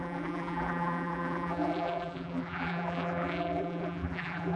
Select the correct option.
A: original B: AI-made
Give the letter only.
B